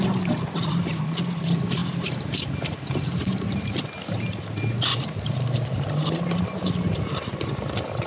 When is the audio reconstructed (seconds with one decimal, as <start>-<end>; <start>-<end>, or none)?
1.8-3.8; 4.9-7.0